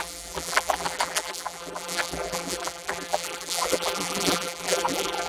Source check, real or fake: fake